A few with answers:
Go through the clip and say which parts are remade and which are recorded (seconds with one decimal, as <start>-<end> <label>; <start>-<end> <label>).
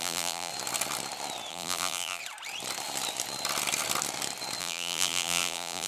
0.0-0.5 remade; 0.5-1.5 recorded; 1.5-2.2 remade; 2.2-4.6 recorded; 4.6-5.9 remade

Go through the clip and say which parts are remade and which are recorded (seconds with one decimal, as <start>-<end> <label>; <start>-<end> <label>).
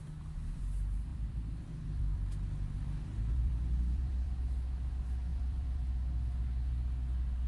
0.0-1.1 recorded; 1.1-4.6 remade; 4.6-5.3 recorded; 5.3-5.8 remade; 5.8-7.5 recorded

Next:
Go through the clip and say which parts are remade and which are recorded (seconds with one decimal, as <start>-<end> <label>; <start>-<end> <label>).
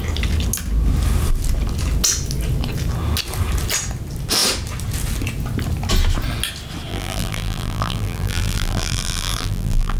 0.0-6.9 recorded; 6.9-10.0 remade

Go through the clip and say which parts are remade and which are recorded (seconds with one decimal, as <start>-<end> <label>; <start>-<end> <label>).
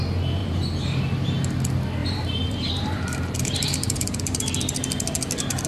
0.0-0.4 recorded; 0.4-1.0 remade; 1.0-2.0 recorded; 2.0-4.4 remade; 4.4-5.7 recorded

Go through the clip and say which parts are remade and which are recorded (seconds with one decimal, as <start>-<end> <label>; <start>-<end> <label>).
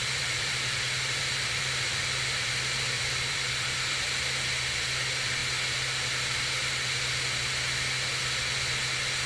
0.0-4.0 remade; 4.0-9.3 recorded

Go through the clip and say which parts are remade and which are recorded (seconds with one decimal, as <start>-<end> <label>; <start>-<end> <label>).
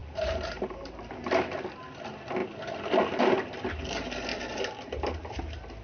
0.0-0.9 remade; 0.9-4.3 recorded; 4.3-5.2 remade; 5.2-5.8 recorded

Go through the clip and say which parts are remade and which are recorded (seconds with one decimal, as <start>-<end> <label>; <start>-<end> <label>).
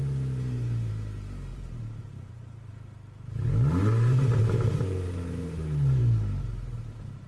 0.0-1.5 recorded; 1.5-2.7 remade; 2.7-3.8 recorded; 3.8-6.0 remade; 6.0-7.3 recorded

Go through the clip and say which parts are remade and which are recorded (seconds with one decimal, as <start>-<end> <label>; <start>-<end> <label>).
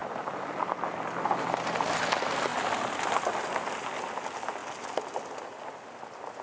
0.0-2.5 recorded; 2.5-3.1 remade; 3.1-6.4 recorded